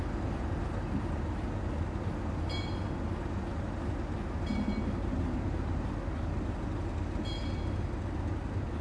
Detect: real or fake real